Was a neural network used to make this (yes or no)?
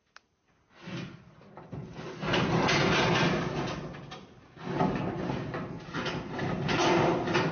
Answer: no